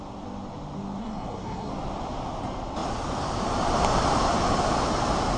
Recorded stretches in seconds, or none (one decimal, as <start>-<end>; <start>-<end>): 0.0-1.0; 1.7-5.4